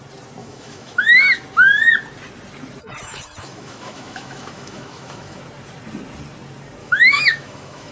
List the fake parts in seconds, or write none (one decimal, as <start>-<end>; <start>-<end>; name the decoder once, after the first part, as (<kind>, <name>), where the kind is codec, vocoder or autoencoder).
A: 0.4-1.2 (autoencoder, DAC-VAE); 2.8-5.4; 6.8-7.9